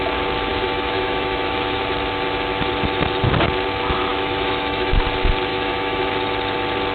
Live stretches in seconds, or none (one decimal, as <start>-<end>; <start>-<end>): 0.0-0.5; 1.8-4.1; 5.0-5.5; 6.1-6.9